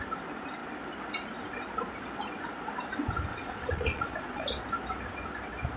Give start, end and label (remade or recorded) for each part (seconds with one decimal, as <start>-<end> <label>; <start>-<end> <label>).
0.0-3.3 recorded; 3.3-4.6 remade; 4.6-5.8 recorded